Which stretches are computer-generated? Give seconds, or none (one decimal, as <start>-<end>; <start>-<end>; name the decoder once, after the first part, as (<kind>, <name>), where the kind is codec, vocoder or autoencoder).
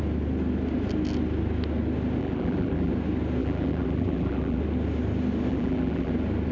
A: 2.2-2.9 (vocoder, BigVGAN v2); 3.4-4.6; 5.5-6.1